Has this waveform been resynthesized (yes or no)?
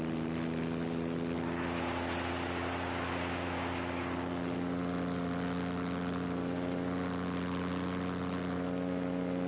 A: no